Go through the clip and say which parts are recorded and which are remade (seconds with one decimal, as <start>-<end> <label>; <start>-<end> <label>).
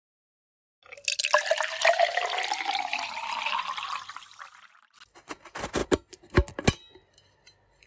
0.0-7.9 recorded